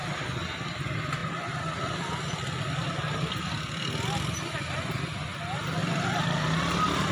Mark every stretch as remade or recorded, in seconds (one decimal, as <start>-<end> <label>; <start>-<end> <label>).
0.0-7.1 recorded